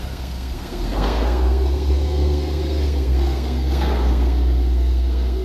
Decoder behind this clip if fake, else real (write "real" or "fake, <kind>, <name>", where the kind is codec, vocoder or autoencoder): fake, codec, SNAC